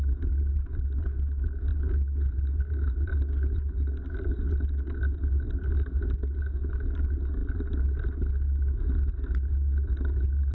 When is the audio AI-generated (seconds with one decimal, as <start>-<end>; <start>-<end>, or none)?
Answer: none